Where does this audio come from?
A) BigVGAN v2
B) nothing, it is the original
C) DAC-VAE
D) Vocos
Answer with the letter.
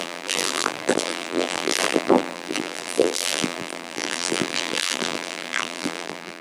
A